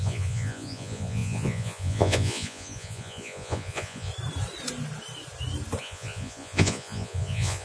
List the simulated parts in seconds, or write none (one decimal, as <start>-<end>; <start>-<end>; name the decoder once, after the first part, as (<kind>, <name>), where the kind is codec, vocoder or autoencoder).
0.0-4.1 (vocoder, Vocos); 5.8-7.6